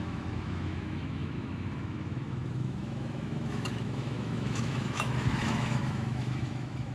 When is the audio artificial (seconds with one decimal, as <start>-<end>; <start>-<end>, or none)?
0.0-6.9